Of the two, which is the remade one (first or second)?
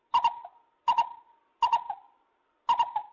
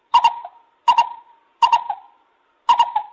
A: second